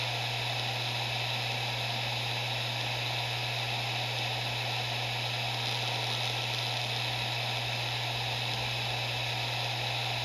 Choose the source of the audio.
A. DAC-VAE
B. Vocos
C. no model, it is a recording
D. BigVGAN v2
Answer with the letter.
C